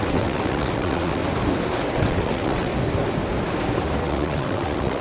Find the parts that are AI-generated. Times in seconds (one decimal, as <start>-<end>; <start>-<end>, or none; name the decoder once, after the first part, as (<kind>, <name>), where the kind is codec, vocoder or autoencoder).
0.0-1.2 (vocoder, WaveNeXt); 1.9-2.7; 4.0-5.0